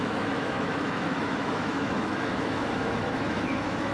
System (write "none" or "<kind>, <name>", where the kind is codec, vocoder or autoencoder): autoencoder, DAC-VAE